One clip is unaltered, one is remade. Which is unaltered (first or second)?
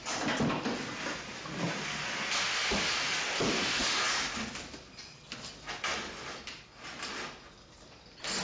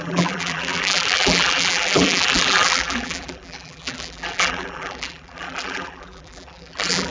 first